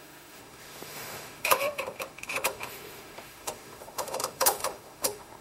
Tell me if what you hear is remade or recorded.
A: remade